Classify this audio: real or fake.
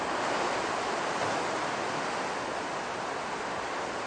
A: real